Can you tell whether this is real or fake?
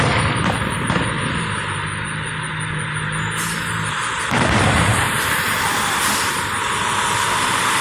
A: real